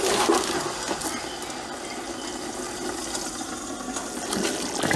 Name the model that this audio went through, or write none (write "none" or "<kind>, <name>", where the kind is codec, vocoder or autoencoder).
none